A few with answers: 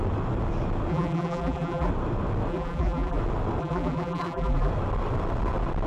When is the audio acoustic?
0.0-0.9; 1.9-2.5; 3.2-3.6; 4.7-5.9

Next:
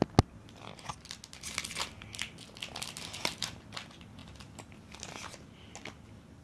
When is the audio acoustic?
0.0-6.4

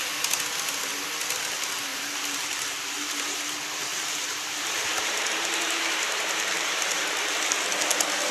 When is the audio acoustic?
0.0-1.9; 3.4-3.9; 7.0-8.3

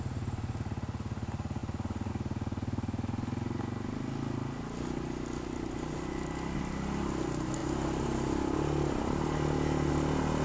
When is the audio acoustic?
0.0-10.4